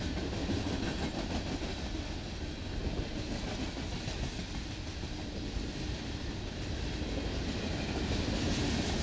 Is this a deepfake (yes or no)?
no